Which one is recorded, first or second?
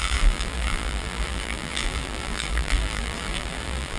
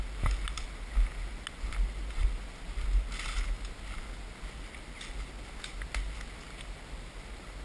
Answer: second